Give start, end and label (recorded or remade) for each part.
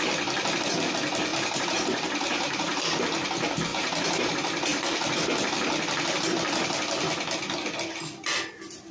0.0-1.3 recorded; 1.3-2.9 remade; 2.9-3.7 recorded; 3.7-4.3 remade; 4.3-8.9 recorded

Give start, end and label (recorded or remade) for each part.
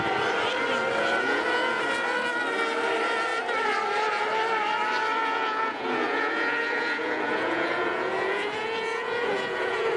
0.0-1.2 recorded; 1.2-1.8 remade; 1.8-5.2 recorded; 5.2-10.0 remade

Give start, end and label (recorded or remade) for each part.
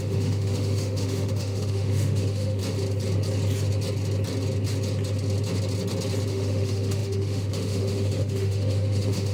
0.0-2.6 remade; 2.6-6.3 recorded; 6.3-9.3 remade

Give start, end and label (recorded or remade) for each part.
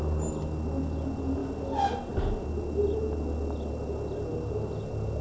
0.0-5.2 recorded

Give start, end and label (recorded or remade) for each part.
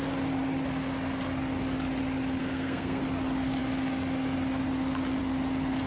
0.0-2.4 recorded; 2.4-3.0 remade; 3.0-5.9 recorded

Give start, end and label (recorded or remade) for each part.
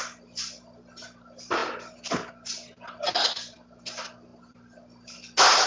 0.0-5.7 recorded